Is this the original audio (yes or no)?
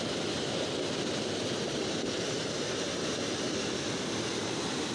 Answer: yes